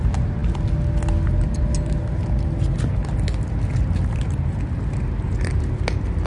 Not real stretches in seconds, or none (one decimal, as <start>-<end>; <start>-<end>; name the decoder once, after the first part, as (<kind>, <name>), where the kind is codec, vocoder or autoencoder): none